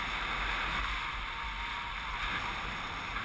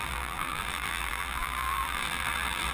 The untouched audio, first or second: first